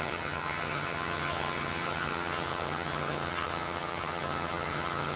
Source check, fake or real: fake